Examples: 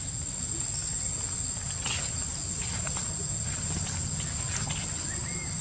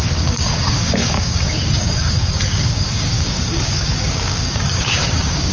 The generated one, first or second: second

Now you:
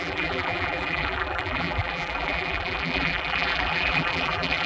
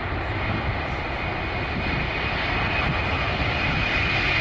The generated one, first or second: first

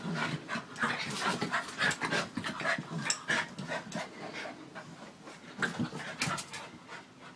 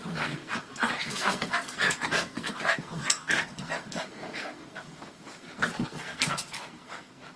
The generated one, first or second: second